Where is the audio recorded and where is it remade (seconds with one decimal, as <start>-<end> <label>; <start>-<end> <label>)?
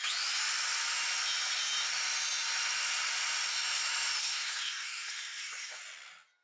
0.0-4.2 recorded; 4.2-5.8 remade; 5.8-6.4 recorded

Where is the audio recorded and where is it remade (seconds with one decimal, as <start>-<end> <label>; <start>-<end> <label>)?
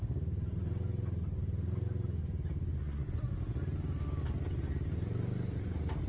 0.0-2.8 recorded; 2.8-3.3 remade; 3.3-6.1 recorded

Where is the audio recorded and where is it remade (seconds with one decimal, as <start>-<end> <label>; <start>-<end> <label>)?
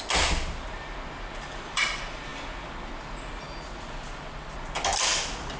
0.0-5.6 recorded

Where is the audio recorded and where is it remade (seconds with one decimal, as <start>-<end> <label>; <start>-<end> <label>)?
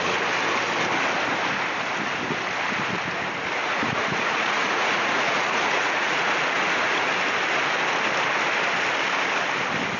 0.0-3.6 recorded; 3.6-7.1 remade; 7.1-10.0 recorded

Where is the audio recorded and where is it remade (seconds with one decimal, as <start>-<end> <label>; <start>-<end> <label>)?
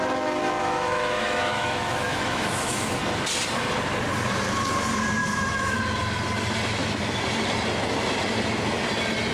0.0-0.6 recorded; 0.6-3.0 remade; 3.0-5.2 recorded; 5.2-5.8 remade; 5.8-9.3 recorded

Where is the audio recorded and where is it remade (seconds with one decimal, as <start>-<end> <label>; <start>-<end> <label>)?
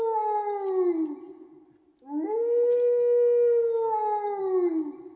0.0-5.2 recorded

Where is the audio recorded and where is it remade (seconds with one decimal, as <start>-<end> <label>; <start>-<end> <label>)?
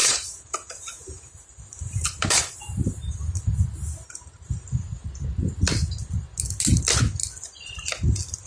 0.0-3.4 remade; 3.4-8.5 recorded